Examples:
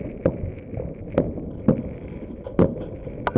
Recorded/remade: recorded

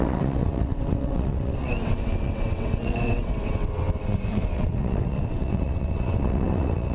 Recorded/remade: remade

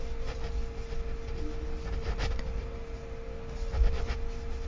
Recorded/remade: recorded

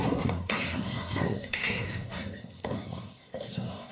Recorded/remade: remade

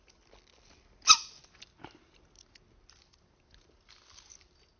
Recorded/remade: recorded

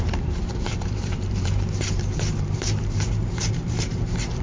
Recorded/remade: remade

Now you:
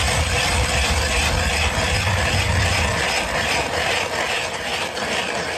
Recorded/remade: recorded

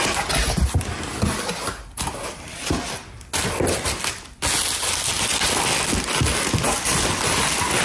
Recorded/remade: recorded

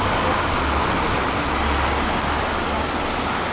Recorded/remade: recorded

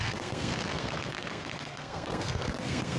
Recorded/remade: remade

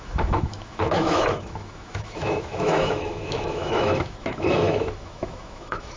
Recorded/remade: remade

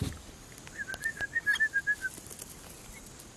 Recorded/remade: recorded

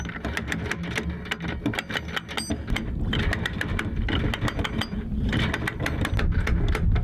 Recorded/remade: recorded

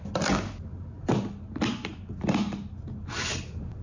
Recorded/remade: recorded